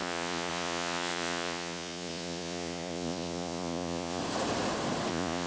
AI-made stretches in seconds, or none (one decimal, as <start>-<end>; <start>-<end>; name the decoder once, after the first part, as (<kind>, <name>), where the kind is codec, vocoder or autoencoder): 0.0-4.2 (vocoder, Vocos); 5.1-5.5